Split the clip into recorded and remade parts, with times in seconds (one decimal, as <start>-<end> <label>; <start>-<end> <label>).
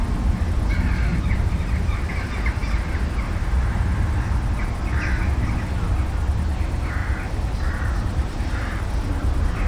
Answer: 0.0-1.1 recorded; 1.1-1.7 remade; 1.7-7.0 recorded; 7.0-8.8 remade; 8.8-9.7 recorded